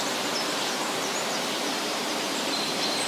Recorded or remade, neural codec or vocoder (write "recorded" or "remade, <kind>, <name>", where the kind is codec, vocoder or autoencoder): remade, vocoder, BigVGAN v2